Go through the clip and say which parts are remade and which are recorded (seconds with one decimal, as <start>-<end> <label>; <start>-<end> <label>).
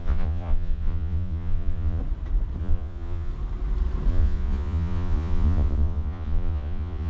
0.0-2.0 remade; 2.0-2.6 recorded; 2.6-3.3 remade; 3.3-4.1 recorded; 4.1-7.1 remade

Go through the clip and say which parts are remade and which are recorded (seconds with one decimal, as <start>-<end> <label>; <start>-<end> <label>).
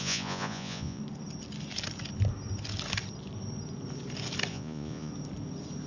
0.0-1.0 remade; 1.0-4.5 recorded; 4.5-5.1 remade; 5.1-5.9 recorded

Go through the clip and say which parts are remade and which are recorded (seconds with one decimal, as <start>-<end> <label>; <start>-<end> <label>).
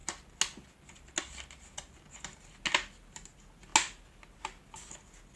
0.0-5.4 recorded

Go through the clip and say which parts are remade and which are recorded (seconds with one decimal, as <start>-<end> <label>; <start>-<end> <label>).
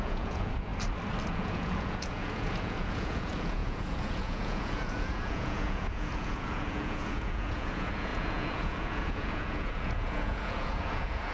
0.0-0.7 remade; 0.7-1.3 recorded; 1.3-11.3 remade